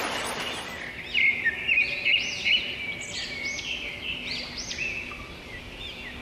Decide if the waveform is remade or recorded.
recorded